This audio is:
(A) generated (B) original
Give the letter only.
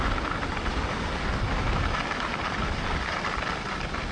B